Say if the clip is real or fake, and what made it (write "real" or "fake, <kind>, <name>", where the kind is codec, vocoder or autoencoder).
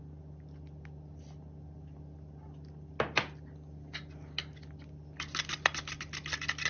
real